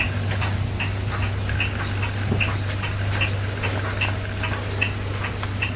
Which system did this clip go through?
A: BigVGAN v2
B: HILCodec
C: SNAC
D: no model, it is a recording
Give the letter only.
D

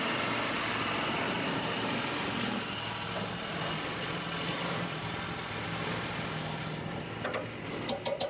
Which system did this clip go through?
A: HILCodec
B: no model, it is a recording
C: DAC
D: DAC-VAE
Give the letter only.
B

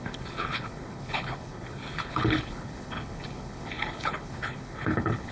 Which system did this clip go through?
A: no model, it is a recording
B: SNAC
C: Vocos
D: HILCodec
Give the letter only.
D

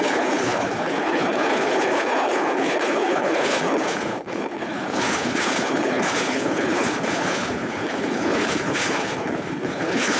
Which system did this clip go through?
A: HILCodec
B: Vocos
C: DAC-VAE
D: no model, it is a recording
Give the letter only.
A